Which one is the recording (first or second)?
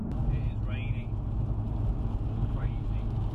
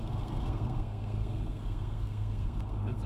first